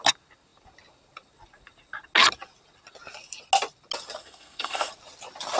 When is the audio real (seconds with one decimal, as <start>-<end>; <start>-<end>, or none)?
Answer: 0.0-4.2; 4.9-5.6

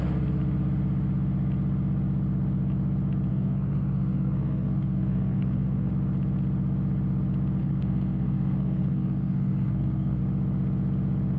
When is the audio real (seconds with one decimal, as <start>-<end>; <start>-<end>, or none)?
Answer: 0.0-3.3; 5.9-7.6; 10.2-11.4

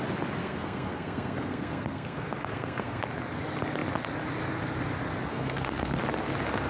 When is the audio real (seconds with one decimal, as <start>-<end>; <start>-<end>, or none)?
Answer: 0.0-0.4; 3.0-5.3; 6.0-6.7

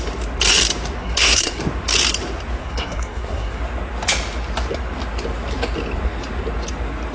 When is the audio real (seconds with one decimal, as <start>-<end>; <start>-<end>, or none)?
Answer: 0.0-1.0; 1.6-2.6; 3.6-7.1

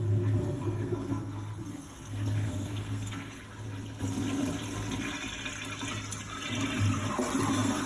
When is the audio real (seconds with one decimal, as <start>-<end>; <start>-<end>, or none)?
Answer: 3.4-7.5

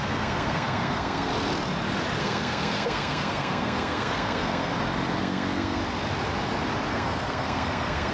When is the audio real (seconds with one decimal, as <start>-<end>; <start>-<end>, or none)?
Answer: 1.3-2.2; 4.7-5.2; 5.8-6.9

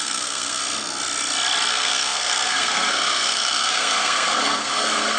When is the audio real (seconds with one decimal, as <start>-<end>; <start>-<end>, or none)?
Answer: 0.6-1.7